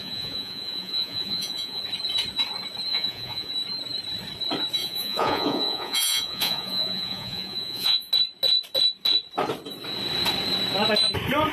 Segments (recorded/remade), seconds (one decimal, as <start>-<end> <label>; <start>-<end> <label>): 0.0-1.8 remade; 1.8-2.9 recorded; 2.9-3.5 remade; 3.5-4.8 recorded; 4.8-8.1 remade; 8.1-11.5 recorded